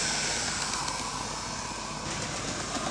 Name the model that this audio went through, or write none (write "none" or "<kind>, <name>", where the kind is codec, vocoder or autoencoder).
none